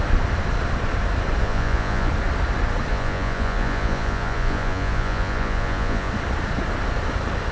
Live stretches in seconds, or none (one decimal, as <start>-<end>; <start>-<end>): 0.0-1.4; 2.1-2.9; 6.1-7.5